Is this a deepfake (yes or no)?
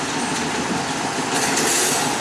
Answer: no